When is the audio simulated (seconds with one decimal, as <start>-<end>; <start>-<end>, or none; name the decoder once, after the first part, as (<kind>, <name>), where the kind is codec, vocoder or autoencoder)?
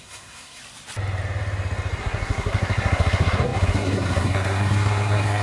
0.0-0.6 (codec, SNAC); 2.0-5.4